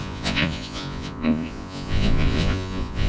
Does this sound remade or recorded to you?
remade